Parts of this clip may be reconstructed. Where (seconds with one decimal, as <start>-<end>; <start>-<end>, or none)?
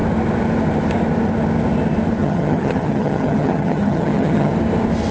2.2-4.5